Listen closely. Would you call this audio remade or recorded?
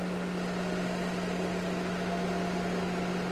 recorded